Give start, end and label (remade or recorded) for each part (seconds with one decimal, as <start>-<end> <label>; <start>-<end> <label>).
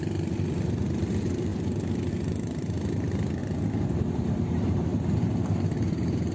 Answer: 0.0-3.4 remade; 3.4-3.9 recorded; 3.9-4.9 remade; 4.9-5.5 recorded; 5.5-6.3 remade